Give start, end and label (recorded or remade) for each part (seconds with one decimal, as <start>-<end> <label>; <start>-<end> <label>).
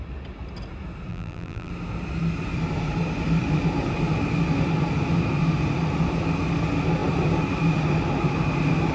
0.0-1.1 recorded; 1.1-1.7 remade; 1.7-8.9 recorded